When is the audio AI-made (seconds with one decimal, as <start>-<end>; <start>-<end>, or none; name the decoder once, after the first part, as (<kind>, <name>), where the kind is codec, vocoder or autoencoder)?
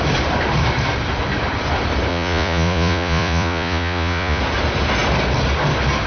2.1-4.4 (vocoder, Vocos)